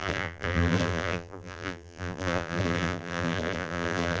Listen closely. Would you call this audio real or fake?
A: fake